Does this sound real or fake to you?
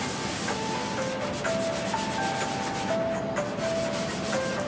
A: real